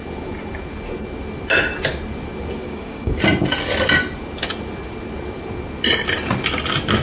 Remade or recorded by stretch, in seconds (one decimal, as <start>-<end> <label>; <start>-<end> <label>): 0.0-2.6 recorded; 2.6-3.2 remade; 3.2-7.0 recorded

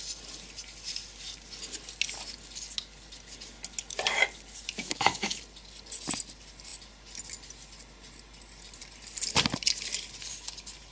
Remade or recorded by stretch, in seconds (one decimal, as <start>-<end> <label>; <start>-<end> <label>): 0.0-4.8 recorded; 4.8-5.4 remade; 5.4-10.9 recorded

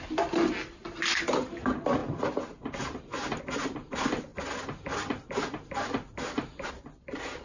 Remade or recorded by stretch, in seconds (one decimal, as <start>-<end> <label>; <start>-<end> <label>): 0.0-7.4 recorded

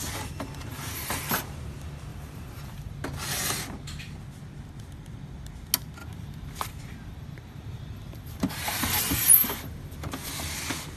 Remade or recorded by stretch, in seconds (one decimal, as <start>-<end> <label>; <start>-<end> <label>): 0.0-0.7 recorded; 0.7-1.4 remade; 1.4-2.1 recorded; 2.1-2.9 remade; 2.9-6.0 recorded; 6.0-10.3 remade; 10.3-11.0 recorded